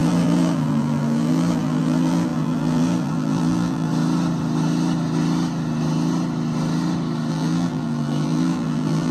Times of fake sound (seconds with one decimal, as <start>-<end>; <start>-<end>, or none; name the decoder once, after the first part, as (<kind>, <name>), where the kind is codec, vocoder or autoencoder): 0.0-3.9 (vocoder, BigVGAN v2); 7.3-9.1